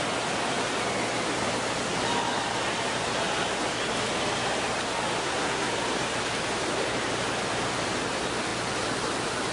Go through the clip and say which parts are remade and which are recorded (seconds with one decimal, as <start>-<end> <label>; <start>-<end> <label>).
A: 0.0-5.2 recorded; 5.2-5.7 remade; 5.7-9.5 recorded

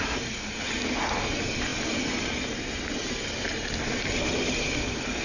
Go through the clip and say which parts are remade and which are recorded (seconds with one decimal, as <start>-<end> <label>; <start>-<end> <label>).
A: 0.0-5.2 recorded

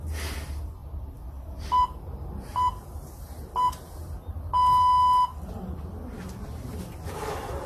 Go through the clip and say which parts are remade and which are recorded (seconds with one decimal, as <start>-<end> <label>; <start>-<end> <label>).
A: 0.0-0.8 recorded; 0.8-1.4 remade; 1.4-5.3 recorded; 5.3-6.8 remade; 6.8-7.7 recorded

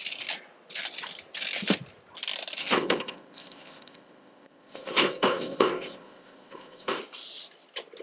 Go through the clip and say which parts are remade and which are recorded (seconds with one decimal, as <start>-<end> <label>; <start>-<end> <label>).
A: 0.0-2.6 recorded; 2.6-7.0 remade; 7.0-8.0 recorded

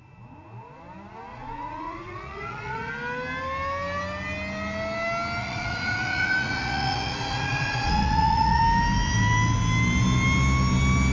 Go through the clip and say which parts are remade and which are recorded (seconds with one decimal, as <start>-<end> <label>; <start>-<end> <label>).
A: 0.0-1.3 recorded; 1.3-2.9 remade; 2.9-5.4 recorded; 5.4-8.6 remade; 8.6-11.1 recorded

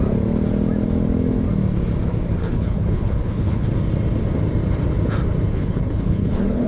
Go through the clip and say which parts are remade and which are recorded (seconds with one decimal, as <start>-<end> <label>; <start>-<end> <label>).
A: 0.0-2.4 recorded; 2.4-3.7 remade; 3.7-5.5 recorded; 5.5-6.7 remade

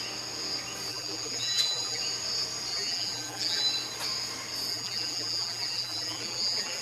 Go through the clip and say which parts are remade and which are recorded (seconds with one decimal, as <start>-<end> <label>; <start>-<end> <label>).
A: 0.0-0.9 recorded; 0.9-2.0 remade; 2.0-2.7 recorded; 2.7-3.6 remade; 3.6-4.7 recorded; 4.7-6.8 remade